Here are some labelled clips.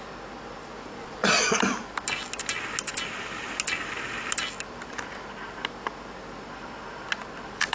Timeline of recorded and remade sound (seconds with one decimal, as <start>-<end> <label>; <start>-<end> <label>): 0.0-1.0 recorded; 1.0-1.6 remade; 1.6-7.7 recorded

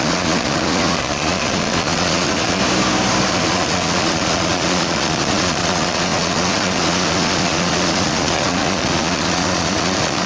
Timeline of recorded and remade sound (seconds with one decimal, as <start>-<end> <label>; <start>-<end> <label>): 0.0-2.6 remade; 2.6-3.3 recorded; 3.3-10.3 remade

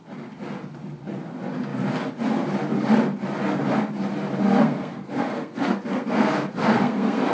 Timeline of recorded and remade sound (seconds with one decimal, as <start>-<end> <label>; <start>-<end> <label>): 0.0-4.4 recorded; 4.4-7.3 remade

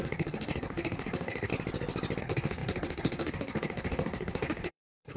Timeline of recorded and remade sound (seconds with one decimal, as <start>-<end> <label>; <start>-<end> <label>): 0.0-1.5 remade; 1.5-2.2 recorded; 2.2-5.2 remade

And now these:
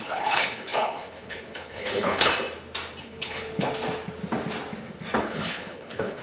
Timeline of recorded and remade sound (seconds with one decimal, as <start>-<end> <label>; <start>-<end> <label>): 0.0-2.3 remade; 2.3-3.0 recorded; 3.0-3.7 remade; 3.7-5.2 recorded; 5.2-6.2 remade

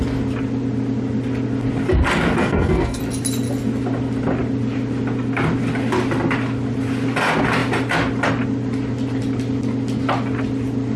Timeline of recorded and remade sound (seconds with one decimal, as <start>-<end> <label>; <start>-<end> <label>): 0.0-2.4 recorded; 2.4-3.0 remade; 3.0-11.0 recorded

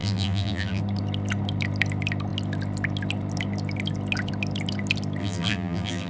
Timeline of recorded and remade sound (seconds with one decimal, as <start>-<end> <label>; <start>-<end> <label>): 0.0-0.8 remade; 0.8-5.2 recorded; 5.2-6.1 remade